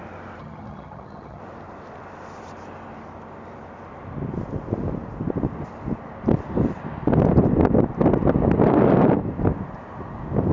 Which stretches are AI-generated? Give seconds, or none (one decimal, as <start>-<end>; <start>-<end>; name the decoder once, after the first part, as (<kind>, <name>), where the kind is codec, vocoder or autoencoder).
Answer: 0.4-1.4 (vocoder, HiFi-GAN)